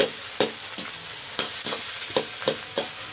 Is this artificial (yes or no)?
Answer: yes